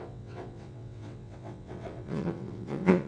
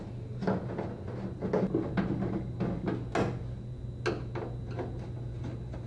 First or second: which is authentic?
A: second